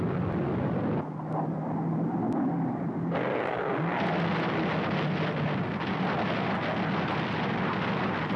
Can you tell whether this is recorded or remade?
recorded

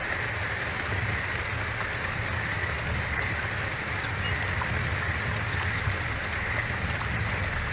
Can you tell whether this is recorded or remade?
recorded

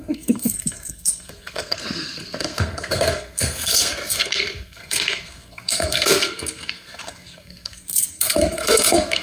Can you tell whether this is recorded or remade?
remade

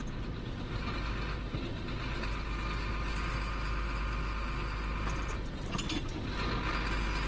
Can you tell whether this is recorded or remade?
recorded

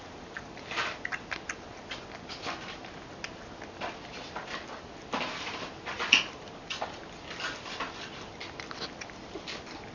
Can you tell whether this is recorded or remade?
recorded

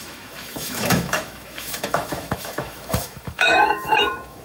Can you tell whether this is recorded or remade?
remade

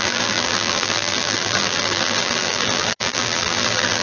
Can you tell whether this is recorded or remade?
remade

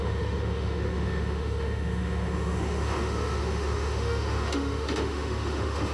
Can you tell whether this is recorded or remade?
remade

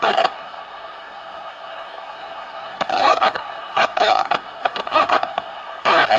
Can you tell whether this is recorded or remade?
remade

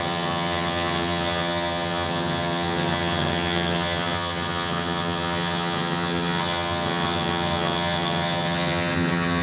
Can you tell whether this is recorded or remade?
remade